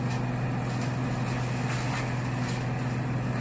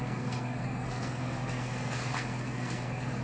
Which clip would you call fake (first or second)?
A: second